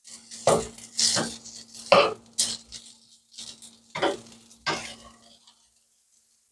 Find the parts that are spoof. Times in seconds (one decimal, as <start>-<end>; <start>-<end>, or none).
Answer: none